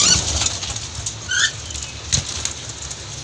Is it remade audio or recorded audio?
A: recorded